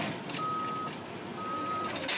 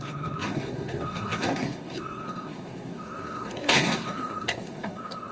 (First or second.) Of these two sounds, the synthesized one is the second